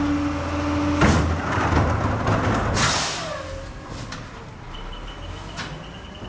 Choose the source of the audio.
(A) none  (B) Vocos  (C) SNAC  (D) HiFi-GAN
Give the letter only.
A